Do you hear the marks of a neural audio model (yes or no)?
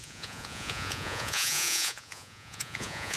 yes